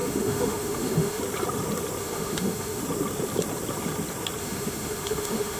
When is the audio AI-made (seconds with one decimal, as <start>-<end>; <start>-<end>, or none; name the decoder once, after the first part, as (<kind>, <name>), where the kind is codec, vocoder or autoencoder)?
0.0-1.2 (autoencoder, DAC-VAE); 2.0-2.8; 4.4-5.6